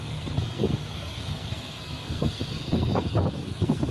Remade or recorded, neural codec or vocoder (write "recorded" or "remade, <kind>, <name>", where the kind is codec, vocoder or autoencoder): remade, codec, SNAC